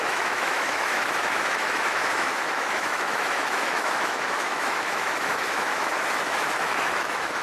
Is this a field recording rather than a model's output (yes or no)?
no